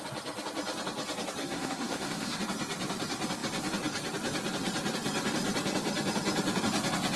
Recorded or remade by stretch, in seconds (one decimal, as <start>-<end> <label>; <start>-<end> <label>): 0.0-1.4 recorded; 1.4-2.4 remade; 2.4-7.2 recorded